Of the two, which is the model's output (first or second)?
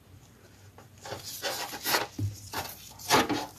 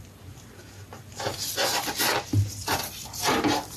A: second